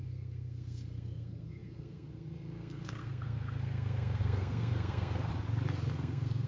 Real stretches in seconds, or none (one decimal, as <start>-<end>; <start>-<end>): 5.3-5.9